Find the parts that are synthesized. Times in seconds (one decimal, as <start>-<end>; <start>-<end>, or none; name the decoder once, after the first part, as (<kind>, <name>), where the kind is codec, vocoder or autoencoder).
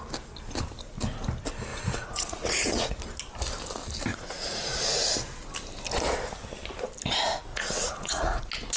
1.7-3.0 (vocoder, Vocos); 4.1-5.0; 7.5-8.4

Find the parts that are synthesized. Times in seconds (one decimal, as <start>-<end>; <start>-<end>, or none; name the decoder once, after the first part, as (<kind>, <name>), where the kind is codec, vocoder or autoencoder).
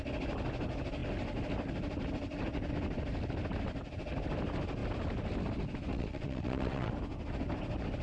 5.9-6.9 (vocoder, WaveNeXt)